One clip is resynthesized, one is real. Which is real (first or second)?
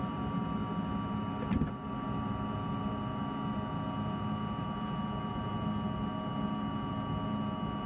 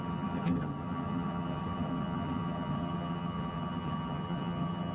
first